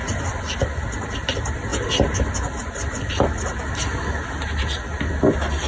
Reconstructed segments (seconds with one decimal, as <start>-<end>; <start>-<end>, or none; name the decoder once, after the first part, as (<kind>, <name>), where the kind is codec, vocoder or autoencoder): none